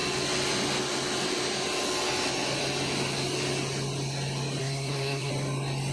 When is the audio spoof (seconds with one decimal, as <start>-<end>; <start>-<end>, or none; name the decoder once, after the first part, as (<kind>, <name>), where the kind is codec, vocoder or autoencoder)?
4.6-5.3 (codec, SNAC)